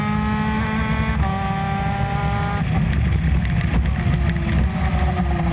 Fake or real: real